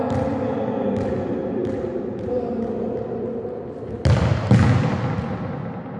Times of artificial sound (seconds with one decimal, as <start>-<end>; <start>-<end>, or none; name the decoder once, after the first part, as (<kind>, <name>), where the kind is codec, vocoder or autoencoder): none